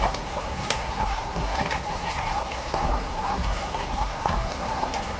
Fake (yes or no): yes